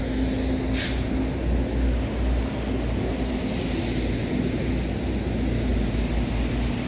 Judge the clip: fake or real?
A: real